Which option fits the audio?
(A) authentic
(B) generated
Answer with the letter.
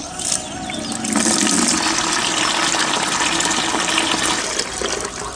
A